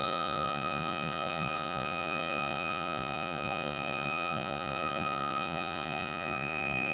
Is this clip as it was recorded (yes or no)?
no